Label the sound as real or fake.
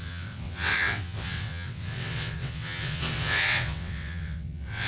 fake